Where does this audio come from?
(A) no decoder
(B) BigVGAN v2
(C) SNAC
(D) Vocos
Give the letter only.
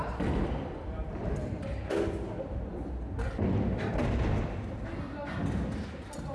A